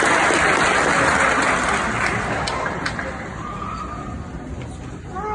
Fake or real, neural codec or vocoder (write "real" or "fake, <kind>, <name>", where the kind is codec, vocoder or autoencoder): real